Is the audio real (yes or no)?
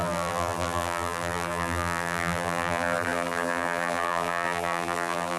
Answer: no